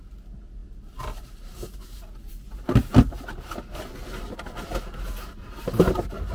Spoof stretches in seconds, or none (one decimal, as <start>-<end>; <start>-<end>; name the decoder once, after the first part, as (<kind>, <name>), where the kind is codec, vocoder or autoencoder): none

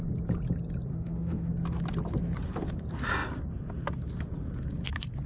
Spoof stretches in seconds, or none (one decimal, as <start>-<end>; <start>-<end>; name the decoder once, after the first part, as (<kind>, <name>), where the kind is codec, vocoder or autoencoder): 0.9-1.5 (autoencoder, DAC-VAE)

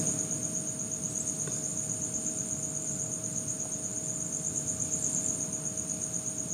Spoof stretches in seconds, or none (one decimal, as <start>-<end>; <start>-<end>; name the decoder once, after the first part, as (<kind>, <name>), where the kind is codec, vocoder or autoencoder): none

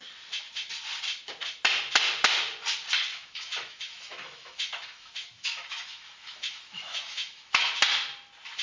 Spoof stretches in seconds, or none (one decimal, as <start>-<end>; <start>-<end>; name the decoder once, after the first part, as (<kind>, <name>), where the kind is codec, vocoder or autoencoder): 3.1-7.7 (autoencoder, DAC-VAE)